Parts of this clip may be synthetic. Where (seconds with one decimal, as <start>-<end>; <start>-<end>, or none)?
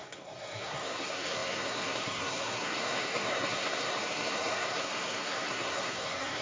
0.0-6.4